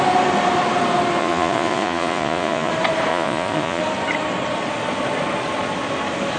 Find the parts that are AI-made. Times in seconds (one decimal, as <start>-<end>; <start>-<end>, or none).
1.2-2.7; 3.1-3.8